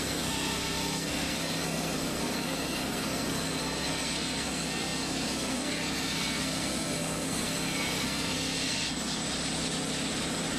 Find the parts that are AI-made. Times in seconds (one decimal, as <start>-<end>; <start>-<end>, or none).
0.0-9.2